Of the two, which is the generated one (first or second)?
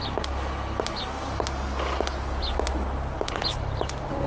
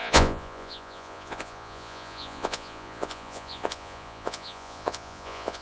second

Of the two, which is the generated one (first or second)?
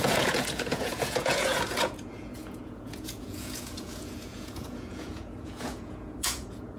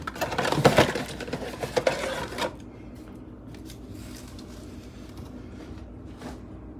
first